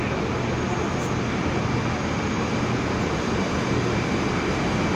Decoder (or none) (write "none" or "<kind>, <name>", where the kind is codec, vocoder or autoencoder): none